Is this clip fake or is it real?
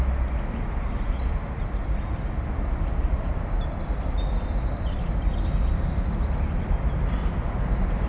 real